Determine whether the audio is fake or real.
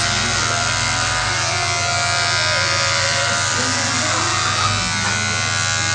real